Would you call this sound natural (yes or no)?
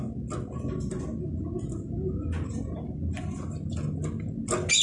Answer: yes